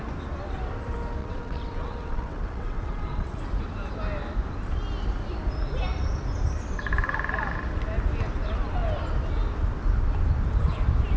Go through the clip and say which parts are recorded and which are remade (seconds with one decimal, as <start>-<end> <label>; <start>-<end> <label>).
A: 0.0-1.2 recorded; 1.2-3.4 remade; 3.4-11.2 recorded

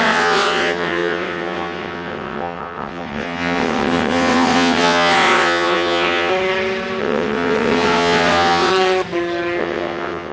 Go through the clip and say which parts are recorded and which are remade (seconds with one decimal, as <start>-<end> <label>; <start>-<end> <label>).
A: 0.0-6.3 remade; 6.3-7.0 recorded; 7.0-8.7 remade; 8.7-9.6 recorded; 9.6-10.3 remade

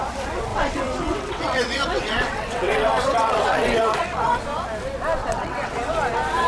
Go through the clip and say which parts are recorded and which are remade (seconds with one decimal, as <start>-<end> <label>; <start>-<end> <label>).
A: 0.0-0.5 recorded; 0.5-4.4 remade; 4.4-5.2 recorded; 5.2-5.7 remade; 5.7-6.5 recorded